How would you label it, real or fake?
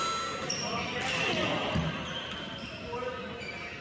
real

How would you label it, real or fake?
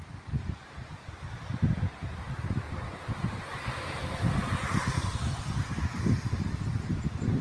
real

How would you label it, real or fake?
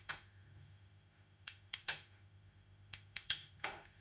fake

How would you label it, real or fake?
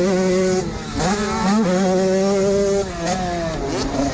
real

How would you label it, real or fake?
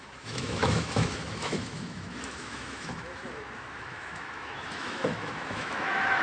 fake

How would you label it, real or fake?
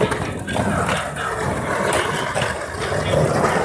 real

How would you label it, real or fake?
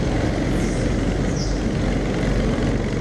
real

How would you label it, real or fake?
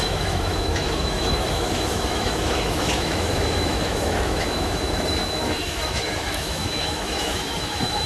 fake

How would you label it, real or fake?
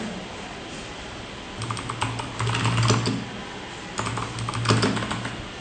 real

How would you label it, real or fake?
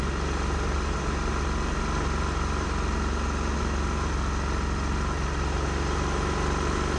real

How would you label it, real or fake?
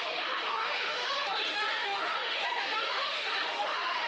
fake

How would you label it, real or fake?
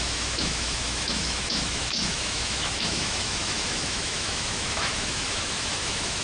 fake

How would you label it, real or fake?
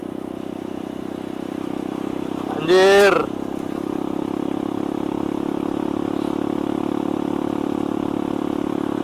real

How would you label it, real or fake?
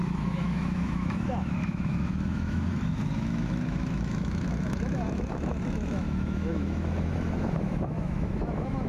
fake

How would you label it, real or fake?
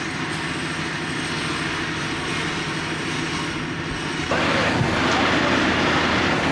real